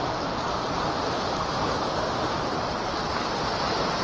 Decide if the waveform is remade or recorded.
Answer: recorded